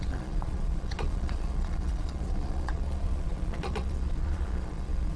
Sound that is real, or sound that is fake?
fake